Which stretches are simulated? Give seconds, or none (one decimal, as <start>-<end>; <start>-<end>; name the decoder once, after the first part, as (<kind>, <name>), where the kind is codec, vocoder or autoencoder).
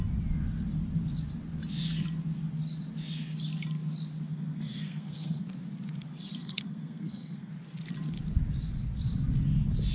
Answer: 4.3-5.5 (codec, SNAC); 6.4-7.5